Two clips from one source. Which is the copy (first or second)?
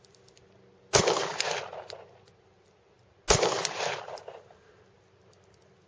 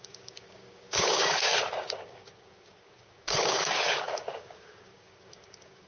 second